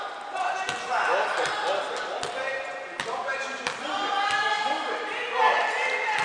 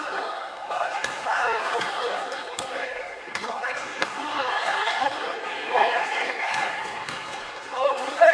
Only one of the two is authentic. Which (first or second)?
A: first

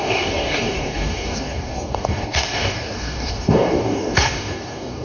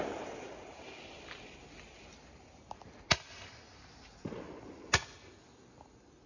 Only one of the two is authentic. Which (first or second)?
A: second